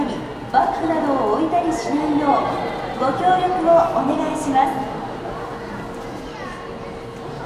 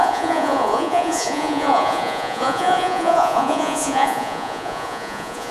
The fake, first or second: second